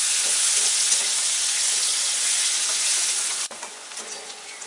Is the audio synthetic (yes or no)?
yes